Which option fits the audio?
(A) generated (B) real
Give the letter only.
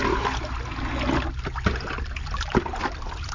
B